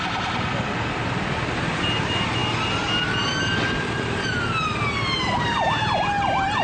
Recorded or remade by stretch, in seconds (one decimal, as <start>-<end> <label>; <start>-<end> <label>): 0.0-6.6 recorded